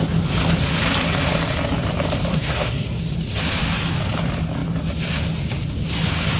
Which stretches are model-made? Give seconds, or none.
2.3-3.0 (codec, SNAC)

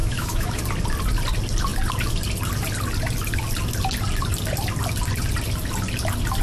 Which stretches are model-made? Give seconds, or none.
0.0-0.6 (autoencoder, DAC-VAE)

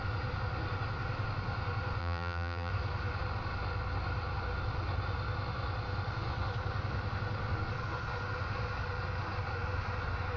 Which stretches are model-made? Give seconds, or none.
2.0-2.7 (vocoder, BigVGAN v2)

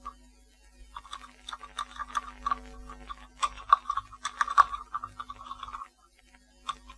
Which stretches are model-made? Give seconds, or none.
none